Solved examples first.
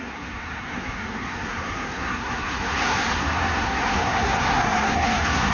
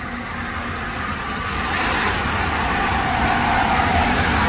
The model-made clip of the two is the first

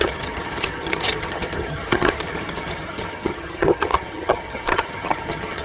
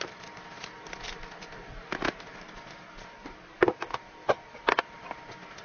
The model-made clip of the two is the first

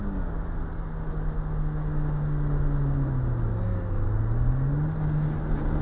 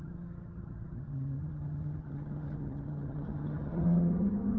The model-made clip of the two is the second